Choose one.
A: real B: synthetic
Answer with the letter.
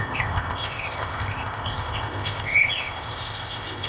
B